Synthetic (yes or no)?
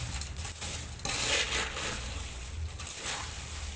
no